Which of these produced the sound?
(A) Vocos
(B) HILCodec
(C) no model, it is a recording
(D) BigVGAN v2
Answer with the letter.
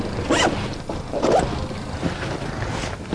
C